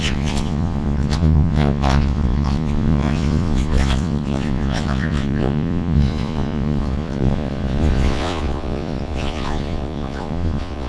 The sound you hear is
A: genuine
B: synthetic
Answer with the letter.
B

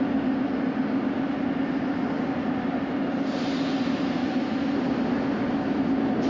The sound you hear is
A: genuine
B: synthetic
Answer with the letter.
A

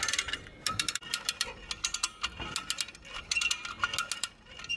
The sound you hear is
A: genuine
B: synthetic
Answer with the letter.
A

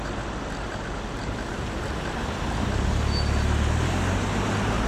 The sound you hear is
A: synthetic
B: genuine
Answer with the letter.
B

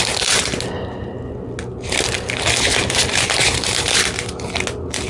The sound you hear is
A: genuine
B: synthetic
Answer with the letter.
A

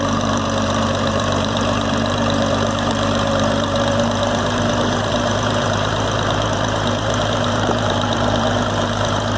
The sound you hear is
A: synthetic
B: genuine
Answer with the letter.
A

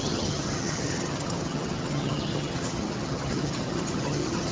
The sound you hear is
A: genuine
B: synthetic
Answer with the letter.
B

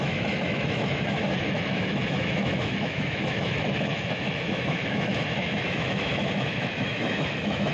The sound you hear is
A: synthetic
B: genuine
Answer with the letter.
A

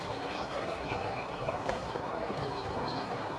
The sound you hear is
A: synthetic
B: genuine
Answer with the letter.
A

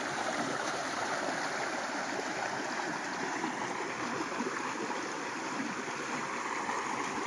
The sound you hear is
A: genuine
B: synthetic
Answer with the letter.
A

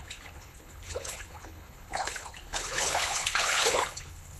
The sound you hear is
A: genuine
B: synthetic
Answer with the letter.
B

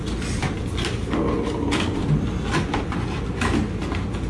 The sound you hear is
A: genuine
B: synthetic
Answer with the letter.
A